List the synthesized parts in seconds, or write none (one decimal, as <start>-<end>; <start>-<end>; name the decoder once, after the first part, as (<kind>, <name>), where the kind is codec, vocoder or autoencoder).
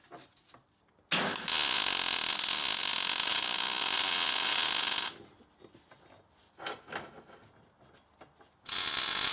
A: none